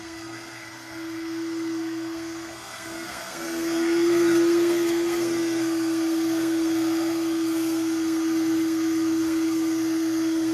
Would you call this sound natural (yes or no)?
no